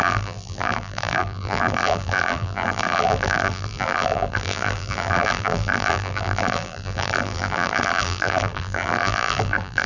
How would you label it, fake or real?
fake